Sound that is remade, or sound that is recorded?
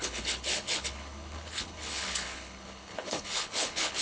remade